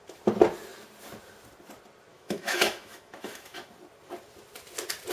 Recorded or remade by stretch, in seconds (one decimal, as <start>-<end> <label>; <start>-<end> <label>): 0.0-2.1 recorded; 2.1-3.7 remade; 3.7-5.1 recorded